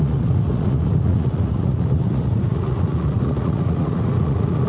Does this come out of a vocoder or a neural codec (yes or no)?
yes